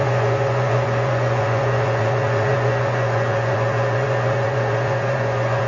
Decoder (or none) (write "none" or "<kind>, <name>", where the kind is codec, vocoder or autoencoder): vocoder, Vocos